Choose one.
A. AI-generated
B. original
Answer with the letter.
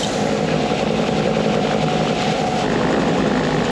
B